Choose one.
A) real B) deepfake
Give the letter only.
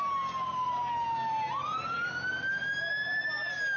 A